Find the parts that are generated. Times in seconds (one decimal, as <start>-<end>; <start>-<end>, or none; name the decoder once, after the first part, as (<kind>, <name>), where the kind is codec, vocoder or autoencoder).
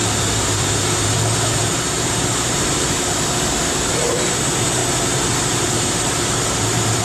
0.0-7.0 (vocoder, BigVGAN v2)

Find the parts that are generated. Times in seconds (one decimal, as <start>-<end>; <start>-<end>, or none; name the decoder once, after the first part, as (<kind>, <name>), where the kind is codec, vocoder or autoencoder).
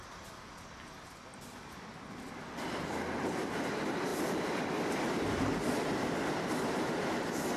none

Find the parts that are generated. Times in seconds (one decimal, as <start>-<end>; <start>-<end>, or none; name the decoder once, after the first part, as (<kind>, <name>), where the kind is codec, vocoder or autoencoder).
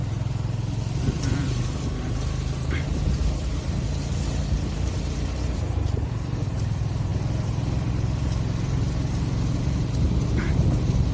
1.2-11.1 (vocoder, BigVGAN v2)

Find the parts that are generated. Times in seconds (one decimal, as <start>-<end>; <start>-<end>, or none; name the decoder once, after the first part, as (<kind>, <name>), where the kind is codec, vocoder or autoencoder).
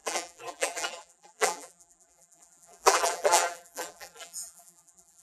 0.0-5.2 (vocoder, BigVGAN v2)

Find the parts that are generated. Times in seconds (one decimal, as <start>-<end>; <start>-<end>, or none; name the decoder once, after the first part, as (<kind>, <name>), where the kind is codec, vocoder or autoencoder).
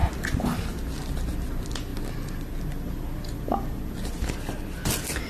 none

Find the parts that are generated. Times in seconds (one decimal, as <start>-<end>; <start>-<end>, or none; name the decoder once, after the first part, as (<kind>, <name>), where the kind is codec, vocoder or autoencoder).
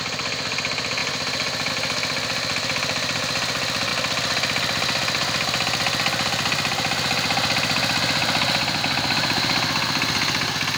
none